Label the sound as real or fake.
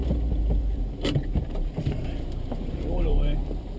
fake